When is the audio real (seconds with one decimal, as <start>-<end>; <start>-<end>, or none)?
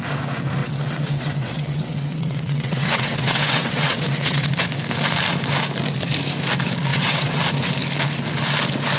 0.0-0.6; 4.5-6.9; 7.4-9.0